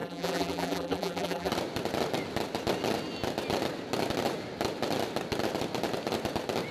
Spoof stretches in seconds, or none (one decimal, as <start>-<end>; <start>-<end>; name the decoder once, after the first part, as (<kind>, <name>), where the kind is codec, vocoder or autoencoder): 0.0-1.5 (vocoder, BigVGAN v2)